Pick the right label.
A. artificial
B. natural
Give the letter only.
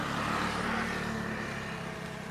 B